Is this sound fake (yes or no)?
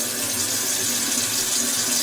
no